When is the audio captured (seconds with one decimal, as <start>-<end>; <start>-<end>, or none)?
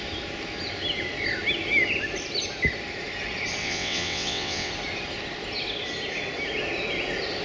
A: 0.0-3.6; 4.7-7.4